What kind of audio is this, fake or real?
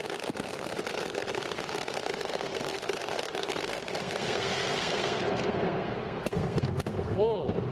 fake